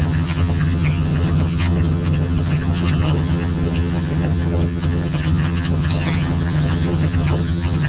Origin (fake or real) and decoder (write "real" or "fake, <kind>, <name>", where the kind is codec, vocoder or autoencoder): fake, vocoder, HiFi-GAN